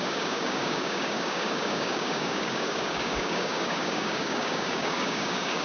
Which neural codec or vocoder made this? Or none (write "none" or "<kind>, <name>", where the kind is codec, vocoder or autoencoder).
codec, DAC